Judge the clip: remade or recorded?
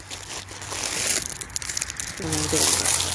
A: recorded